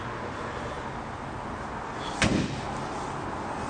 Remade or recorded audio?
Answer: recorded